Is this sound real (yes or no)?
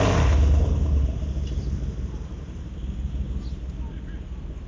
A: yes